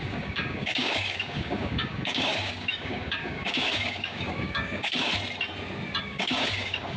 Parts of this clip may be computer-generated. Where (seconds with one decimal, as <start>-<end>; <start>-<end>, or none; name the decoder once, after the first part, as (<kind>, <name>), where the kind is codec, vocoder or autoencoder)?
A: 0.0-5.1 (codec, DAC); 6.0-7.0